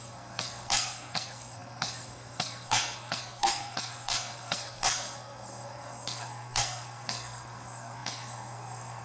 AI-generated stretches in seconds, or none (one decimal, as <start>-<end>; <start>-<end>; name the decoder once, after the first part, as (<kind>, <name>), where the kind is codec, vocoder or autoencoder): 0.0-9.0 (codec, SNAC)

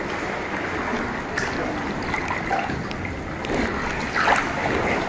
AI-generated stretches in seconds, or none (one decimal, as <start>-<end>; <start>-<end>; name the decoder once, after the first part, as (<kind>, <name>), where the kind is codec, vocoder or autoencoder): none